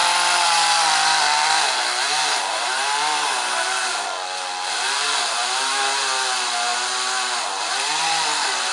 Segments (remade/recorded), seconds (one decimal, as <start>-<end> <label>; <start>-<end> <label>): 0.0-6.7 remade; 6.7-7.6 recorded; 7.6-8.7 remade